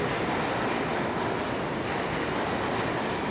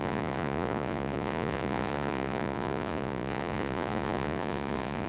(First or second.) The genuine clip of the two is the first